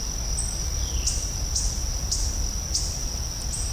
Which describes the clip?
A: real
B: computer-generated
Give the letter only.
A